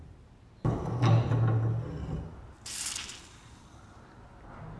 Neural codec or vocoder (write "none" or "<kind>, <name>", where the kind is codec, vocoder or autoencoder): none